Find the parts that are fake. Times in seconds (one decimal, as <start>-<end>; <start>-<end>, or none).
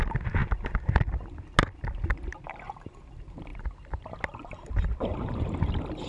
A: none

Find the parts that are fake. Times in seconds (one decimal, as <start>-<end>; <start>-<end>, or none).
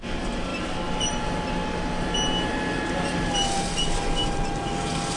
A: none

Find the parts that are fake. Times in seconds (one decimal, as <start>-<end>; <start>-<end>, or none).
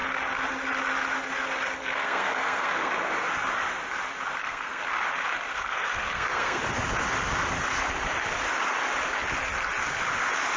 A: 1.8-2.9; 4.4-4.9; 5.5-6.6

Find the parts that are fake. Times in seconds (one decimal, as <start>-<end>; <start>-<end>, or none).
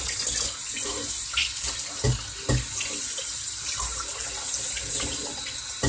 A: none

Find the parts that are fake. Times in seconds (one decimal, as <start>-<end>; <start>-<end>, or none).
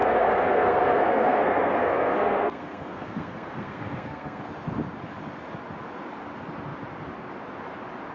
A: 0.0-4.4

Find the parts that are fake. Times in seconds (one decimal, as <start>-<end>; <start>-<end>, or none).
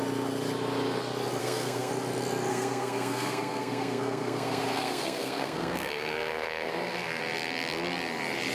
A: 1.4-1.9; 2.5-7.2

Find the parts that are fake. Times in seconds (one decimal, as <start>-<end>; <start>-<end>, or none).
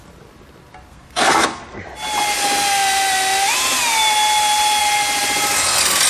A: 0.9-1.8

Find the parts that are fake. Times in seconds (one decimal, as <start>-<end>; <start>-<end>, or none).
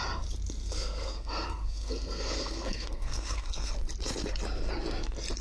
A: 0.6-3.7